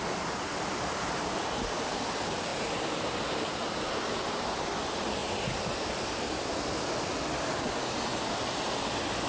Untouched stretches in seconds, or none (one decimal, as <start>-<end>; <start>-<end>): 0.0-0.5; 1.4-8.1; 8.7-9.3